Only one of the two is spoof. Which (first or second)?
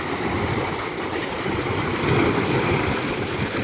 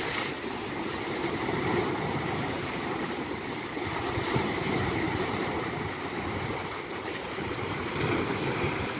second